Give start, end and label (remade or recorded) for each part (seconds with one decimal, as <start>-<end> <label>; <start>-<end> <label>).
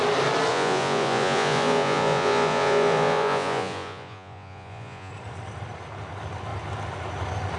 0.0-0.5 recorded; 0.5-5.1 remade; 5.1-7.6 recorded